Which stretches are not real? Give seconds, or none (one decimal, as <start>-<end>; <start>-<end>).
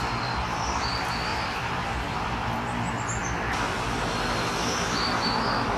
1.3-4.0